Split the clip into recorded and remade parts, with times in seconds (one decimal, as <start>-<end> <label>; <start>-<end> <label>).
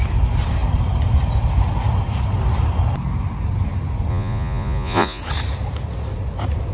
0.0-4.1 recorded; 4.1-5.2 remade; 5.2-6.7 recorded